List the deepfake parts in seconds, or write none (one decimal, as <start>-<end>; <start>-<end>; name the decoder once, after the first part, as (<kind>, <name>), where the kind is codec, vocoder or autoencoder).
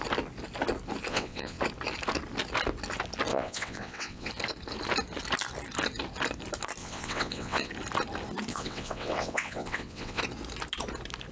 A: 1.1-1.6 (vocoder, WaveNeXt); 3.3-4.3; 6.8-7.7; 8.5-10.2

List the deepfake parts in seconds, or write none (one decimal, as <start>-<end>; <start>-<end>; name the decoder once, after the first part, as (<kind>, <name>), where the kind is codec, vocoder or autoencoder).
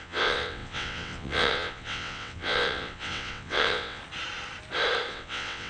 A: 0.0-4.0 (vocoder, WaveNeXt); 5.1-5.7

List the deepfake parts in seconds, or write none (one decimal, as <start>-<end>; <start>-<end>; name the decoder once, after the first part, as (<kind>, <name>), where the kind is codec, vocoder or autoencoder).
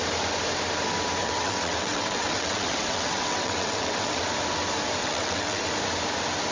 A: 1.2-4.2 (vocoder, WaveNeXt); 5.0-5.7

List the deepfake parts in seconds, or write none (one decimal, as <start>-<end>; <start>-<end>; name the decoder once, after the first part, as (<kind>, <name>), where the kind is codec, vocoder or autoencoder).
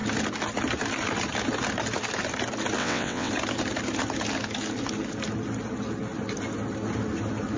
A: 2.8-3.3 (vocoder, WaveNeXt)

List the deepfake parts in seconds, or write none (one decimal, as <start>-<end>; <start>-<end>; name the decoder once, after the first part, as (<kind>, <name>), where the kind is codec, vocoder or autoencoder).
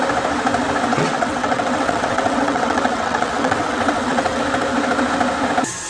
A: 0.9-4.4 (vocoder, WaveNeXt)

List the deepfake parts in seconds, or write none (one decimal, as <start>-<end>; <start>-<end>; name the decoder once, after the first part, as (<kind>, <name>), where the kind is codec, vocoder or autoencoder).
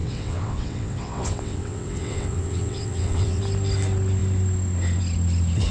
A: 0.0-3.4 (vocoder, WaveNeXt)